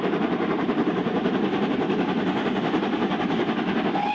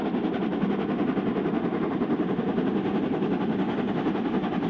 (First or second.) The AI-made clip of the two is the first